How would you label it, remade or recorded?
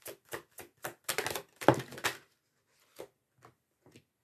recorded